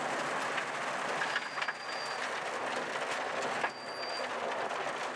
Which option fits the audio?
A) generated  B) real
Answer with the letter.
B